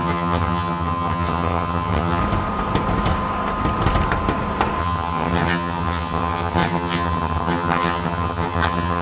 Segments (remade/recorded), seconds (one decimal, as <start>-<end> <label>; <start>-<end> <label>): 0.0-2.2 remade; 2.2-4.8 recorded; 4.8-9.0 remade